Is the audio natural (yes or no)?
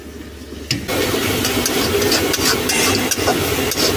yes